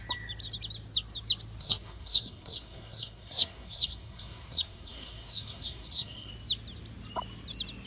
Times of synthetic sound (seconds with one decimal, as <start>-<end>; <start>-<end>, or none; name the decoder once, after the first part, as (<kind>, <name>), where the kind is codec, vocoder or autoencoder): 1.6-6.3 (codec, SNAC)